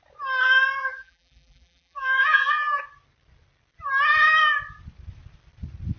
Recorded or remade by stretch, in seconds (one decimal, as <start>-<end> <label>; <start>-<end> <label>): 0.0-0.8 recorded; 0.8-2.8 remade; 2.8-6.0 recorded